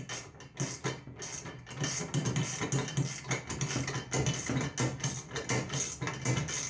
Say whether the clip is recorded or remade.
recorded